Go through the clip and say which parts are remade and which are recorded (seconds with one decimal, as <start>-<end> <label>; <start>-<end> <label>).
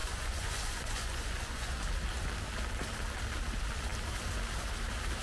0.0-1.8 remade; 1.8-5.2 recorded